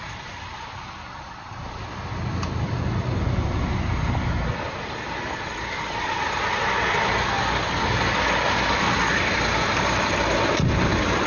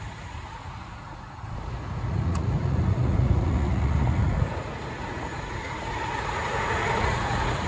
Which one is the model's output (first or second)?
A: second